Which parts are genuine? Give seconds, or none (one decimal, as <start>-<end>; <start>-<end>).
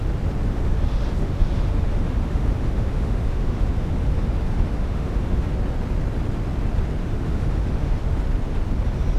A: 0.0-0.5; 5.5-7.0; 8.2-9.2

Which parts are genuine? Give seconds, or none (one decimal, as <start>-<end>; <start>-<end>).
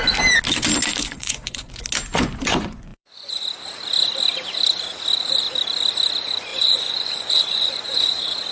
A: 0.0-1.0; 1.7-2.5; 3.3-6.5; 8.1-8.5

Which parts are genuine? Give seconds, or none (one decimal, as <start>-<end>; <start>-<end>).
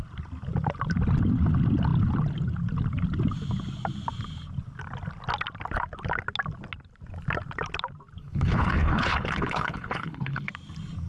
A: 0.0-8.2; 10.5-11.1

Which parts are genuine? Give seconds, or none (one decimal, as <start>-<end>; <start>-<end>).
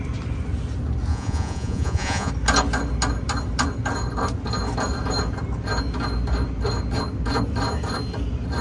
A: 0.0-1.1; 2.3-8.6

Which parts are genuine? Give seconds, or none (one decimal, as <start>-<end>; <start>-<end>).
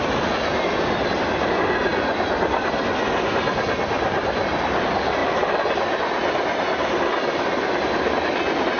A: 0.0-8.8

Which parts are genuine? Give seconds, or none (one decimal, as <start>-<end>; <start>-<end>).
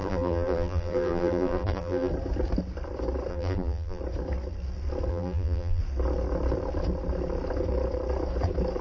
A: 2.1-3.3; 4.0-5.1; 5.8-8.8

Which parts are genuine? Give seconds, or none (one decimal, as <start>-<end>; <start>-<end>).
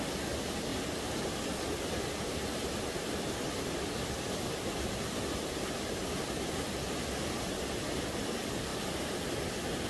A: 0.0-9.9